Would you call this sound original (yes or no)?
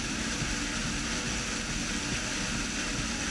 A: yes